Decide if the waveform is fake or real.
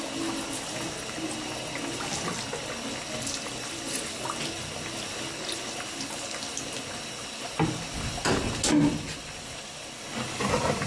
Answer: real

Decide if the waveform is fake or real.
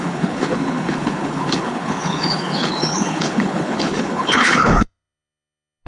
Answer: fake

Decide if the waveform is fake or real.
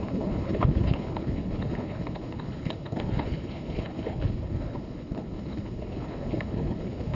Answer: fake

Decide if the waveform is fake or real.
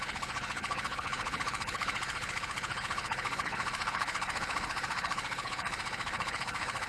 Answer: fake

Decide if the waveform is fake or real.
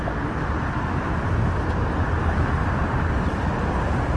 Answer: real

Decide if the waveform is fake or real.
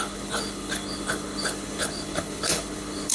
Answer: fake